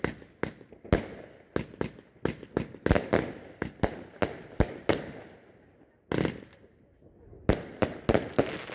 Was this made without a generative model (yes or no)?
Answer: yes